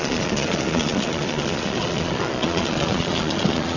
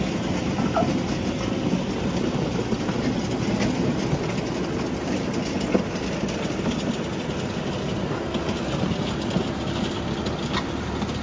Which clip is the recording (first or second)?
second